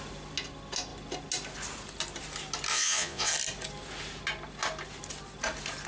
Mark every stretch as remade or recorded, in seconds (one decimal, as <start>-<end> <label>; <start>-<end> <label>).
0.0-2.7 recorded; 2.7-3.3 remade; 3.3-5.9 recorded